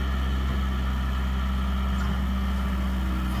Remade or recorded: recorded